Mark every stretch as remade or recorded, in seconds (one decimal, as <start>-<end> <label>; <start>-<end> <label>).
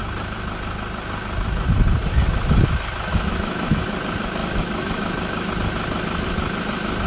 0.0-3.1 recorded; 3.1-3.9 remade; 3.9-4.4 recorded; 4.4-5.5 remade; 5.5-7.1 recorded